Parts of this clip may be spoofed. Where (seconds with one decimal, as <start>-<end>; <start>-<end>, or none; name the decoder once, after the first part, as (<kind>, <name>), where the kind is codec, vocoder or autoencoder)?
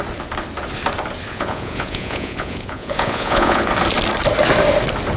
1.3-3.7 (vocoder, Vocos)